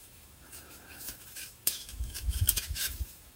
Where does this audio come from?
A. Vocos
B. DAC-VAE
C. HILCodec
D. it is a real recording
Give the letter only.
B